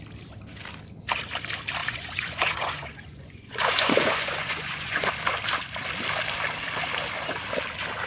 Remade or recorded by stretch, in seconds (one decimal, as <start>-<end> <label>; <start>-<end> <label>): 0.0-1.8 recorded; 1.8-5.1 remade; 5.1-8.1 recorded